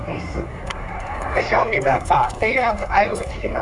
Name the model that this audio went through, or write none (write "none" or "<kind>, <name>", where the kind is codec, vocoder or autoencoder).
codec, SNAC